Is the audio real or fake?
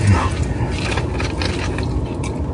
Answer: real